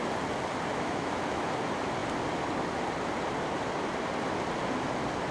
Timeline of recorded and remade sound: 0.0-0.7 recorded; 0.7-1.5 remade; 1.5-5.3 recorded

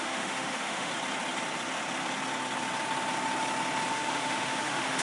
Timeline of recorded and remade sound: 0.0-0.9 remade; 0.9-3.9 recorded; 3.9-5.0 remade